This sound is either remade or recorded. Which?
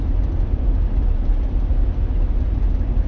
recorded